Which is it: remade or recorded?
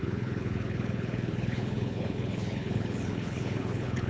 remade